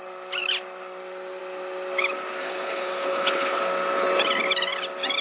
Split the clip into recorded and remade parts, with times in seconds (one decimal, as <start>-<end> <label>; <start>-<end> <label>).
0.0-2.4 recorded; 2.4-3.6 remade; 3.6-5.2 recorded